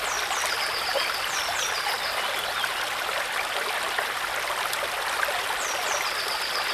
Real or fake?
real